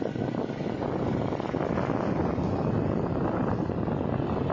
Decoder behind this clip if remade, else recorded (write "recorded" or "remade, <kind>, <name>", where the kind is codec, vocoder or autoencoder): recorded